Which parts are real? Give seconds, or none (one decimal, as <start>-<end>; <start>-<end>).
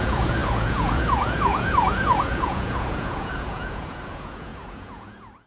none